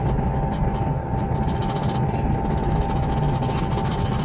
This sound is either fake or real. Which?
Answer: real